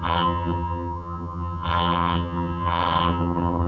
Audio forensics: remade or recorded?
remade